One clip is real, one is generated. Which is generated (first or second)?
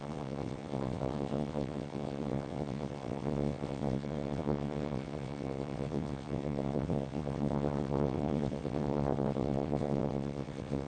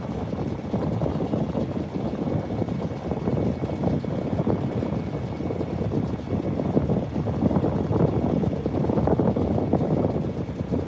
first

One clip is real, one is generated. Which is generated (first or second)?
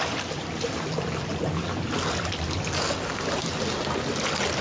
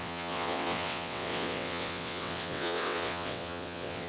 second